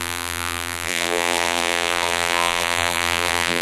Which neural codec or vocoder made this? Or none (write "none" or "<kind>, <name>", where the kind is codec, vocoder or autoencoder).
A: vocoder, BigVGAN v2